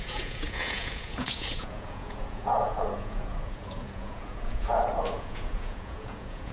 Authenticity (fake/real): fake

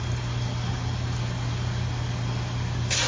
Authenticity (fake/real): real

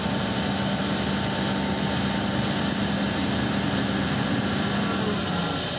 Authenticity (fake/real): real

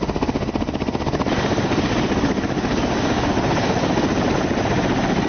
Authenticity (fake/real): real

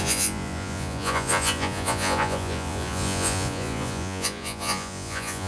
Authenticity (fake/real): fake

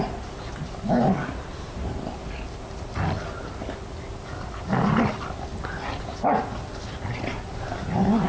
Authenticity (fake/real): real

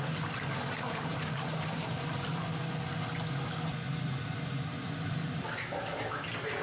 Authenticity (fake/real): real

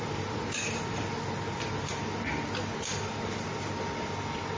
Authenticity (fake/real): real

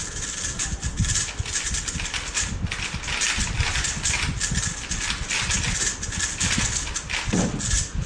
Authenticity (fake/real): real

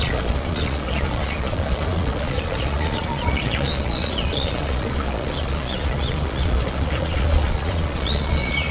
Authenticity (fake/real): fake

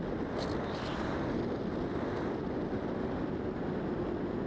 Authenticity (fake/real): real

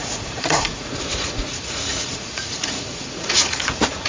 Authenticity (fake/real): fake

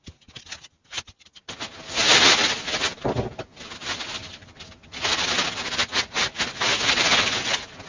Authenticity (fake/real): real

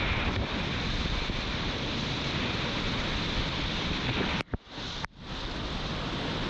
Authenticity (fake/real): real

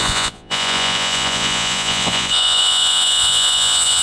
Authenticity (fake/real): fake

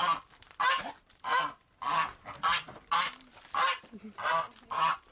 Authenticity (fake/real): real